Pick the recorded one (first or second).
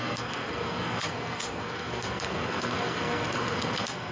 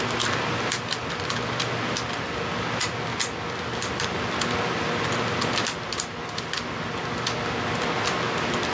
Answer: second